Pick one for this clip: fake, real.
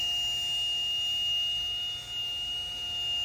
real